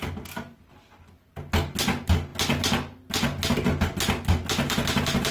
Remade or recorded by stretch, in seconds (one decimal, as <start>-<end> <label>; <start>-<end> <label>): 0.0-5.3 recorded